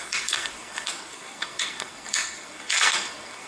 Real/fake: fake